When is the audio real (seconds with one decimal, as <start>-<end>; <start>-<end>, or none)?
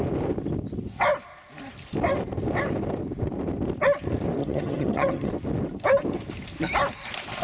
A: 0.0-4.4; 5.3-7.4